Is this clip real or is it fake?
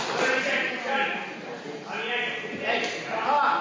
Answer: real